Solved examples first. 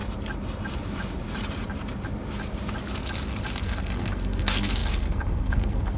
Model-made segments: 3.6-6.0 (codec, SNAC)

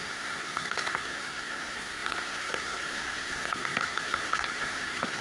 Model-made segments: 0.0-5.2 (codec, SNAC)

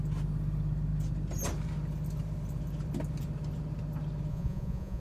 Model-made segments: 4.3-5.0 (vocoder, Vocos)

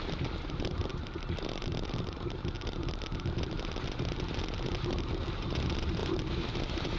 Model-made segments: none

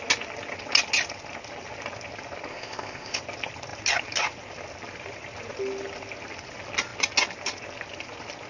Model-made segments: 2.5-3.2 (codec, ZipCodec)